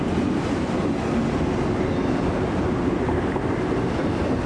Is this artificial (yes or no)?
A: no